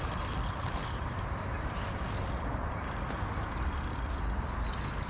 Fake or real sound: real